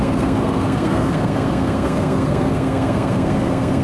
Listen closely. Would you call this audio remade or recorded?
remade